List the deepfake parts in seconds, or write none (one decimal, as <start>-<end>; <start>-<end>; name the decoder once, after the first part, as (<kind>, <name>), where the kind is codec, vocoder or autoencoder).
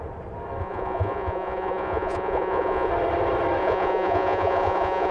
0.6-2.9 (vocoder, Vocos); 3.6-5.1